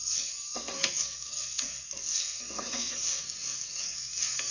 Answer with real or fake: fake